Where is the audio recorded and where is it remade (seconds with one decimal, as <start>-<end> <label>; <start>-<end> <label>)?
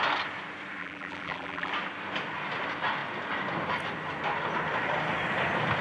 0.0-0.8 recorded; 0.8-1.7 remade; 1.7-5.8 recorded